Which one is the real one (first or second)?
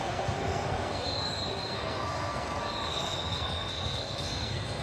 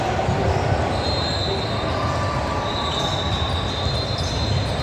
second